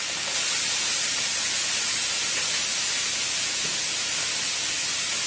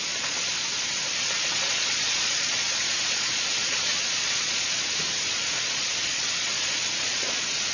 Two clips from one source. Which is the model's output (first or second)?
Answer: second